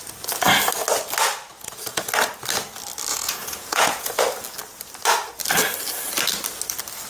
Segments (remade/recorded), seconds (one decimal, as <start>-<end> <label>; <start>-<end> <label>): 0.0-1.5 recorded; 1.5-2.1 remade; 2.1-3.1 recorded; 3.1-4.2 remade; 4.2-7.1 recorded